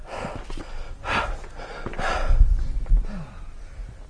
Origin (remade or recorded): recorded